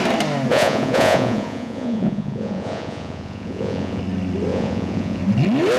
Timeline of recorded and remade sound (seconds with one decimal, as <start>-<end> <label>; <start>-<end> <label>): 0.0-0.5 recorded; 0.5-4.0 remade; 4.0-4.5 recorded; 4.5-5.2 remade; 5.2-5.8 recorded